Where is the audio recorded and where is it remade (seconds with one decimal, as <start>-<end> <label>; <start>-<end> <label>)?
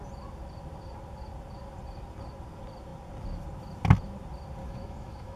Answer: 0.0-4.6 recorded; 4.6-5.4 remade